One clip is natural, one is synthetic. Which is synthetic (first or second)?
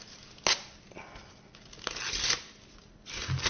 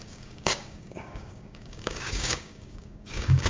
second